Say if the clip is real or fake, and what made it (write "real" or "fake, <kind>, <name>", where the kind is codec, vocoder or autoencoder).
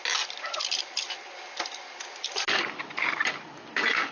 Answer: real